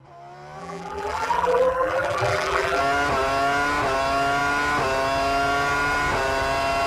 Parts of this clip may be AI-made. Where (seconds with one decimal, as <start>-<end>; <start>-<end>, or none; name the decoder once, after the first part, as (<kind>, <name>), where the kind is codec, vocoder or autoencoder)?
0.6-2.8 (vocoder, BigVGAN v2)